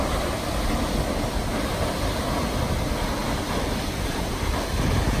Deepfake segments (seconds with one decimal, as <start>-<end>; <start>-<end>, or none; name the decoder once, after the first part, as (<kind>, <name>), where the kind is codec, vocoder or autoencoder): 3.2-4.7 (vocoder, BigVGAN v2)